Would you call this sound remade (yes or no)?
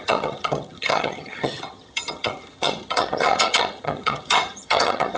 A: yes